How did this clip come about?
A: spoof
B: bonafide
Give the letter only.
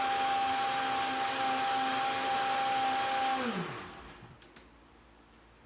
B